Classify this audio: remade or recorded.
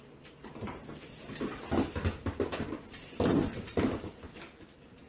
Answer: recorded